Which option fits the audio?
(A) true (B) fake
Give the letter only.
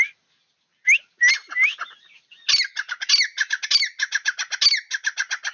A